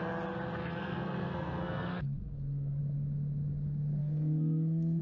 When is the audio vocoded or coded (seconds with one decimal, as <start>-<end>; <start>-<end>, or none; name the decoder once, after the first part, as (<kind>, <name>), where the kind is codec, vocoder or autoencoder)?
0.6-2.8 (codec, SNAC); 4.0-5.0